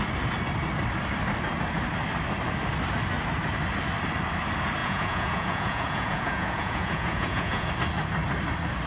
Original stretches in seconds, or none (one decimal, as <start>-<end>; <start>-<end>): 0.0-4.8; 7.7-8.9